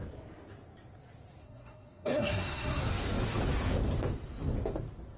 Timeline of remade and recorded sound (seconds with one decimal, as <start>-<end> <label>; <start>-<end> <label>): 0.0-1.4 recorded; 1.4-2.8 remade; 2.8-5.2 recorded